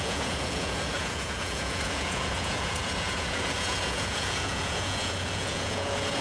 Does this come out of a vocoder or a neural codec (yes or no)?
yes